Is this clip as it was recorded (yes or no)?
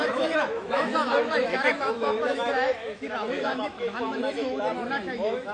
no